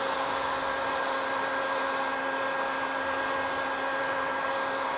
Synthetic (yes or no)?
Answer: no